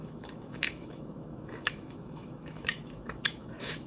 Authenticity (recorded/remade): remade